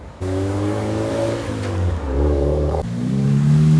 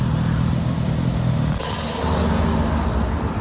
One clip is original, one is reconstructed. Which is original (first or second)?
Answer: second